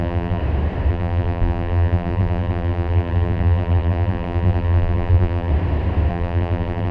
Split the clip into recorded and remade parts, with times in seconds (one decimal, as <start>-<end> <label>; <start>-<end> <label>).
0.0-0.4 remade; 0.4-0.9 recorded; 0.9-5.5 remade; 5.5-6.1 recorded; 6.1-6.9 remade